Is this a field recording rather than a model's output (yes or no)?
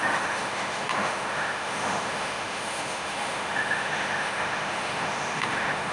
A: no